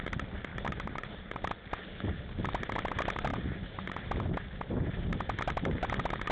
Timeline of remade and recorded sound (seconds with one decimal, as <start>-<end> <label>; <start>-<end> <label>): 0.0-0.5 recorded; 0.5-1.1 remade; 1.1-3.3 recorded; 3.3-4.1 remade; 4.1-6.3 recorded